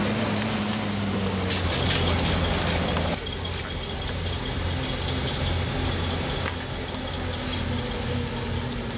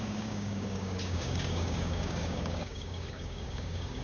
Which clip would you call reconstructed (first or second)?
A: second